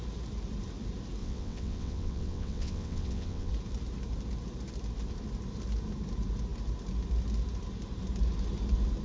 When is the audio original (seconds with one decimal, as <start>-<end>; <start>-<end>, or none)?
0.0-1.2; 3.5-9.0